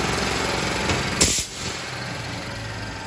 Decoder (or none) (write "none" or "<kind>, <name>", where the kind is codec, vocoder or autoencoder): none